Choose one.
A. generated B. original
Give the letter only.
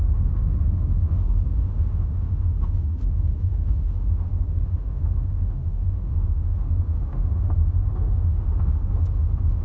A